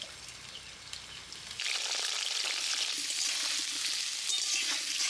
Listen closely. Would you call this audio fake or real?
real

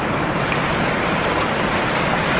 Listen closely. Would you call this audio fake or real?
real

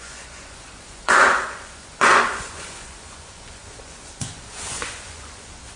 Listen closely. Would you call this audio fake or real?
fake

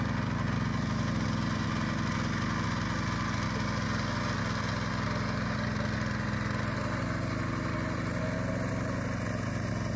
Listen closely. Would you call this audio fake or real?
real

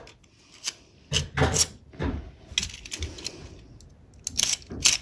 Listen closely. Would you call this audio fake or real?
real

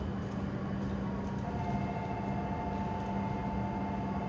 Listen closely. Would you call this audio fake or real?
real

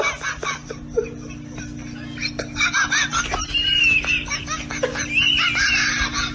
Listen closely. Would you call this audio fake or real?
real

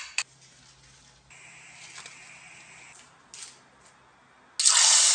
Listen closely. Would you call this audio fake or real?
real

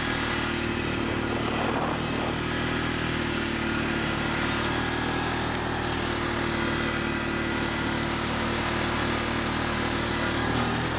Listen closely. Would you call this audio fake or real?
real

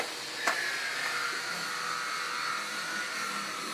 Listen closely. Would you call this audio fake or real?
real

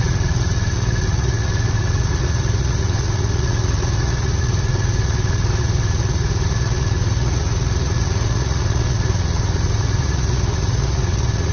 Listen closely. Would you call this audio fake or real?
fake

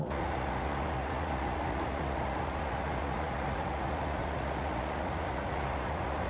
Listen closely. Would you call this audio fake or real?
fake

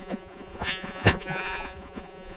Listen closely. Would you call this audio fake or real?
fake